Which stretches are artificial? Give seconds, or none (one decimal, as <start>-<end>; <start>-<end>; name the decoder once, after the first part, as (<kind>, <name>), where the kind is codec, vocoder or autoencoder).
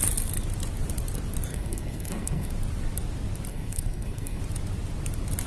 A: 1.5-2.5 (codec, SNAC); 3.5-4.4